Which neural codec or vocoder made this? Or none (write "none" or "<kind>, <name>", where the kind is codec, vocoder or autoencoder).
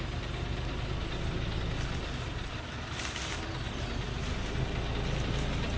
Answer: none